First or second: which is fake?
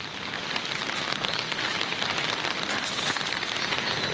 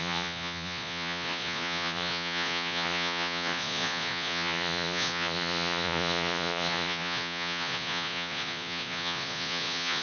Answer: second